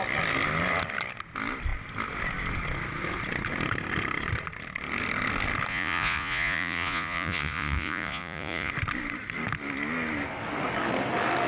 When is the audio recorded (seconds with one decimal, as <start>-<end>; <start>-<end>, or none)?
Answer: 0.0-5.7; 8.7-11.5